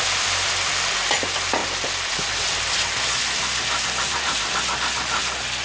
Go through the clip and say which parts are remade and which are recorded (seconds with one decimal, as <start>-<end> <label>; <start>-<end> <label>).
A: 0.0-5.6 recorded